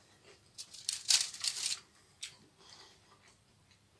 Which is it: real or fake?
real